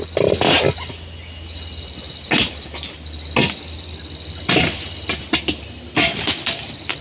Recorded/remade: recorded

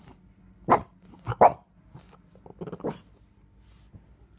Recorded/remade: recorded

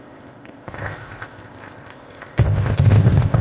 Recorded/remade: remade